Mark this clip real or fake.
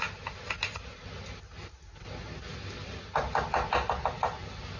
real